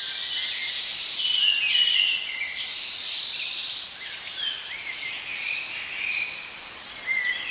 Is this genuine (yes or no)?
yes